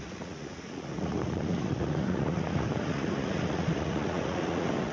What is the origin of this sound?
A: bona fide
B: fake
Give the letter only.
B